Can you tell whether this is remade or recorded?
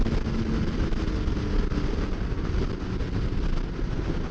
recorded